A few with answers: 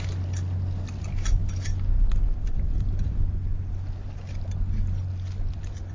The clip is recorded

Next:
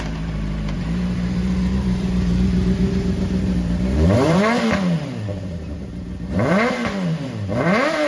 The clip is remade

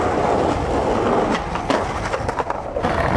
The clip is recorded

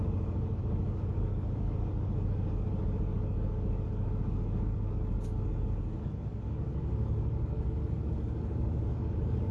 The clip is remade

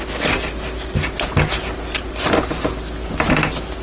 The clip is recorded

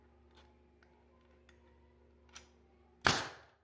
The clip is recorded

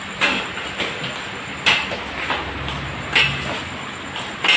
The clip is recorded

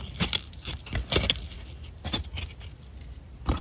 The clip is recorded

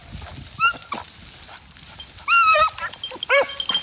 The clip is recorded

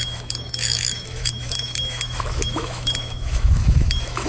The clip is remade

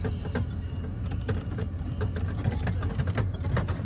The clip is recorded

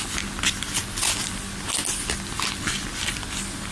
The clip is recorded